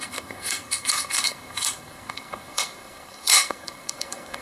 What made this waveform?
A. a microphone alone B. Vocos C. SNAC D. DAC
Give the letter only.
C